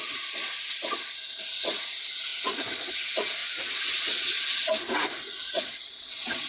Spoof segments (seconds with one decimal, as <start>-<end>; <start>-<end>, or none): 0.0-3.4; 4.0-4.7; 5.5-6.5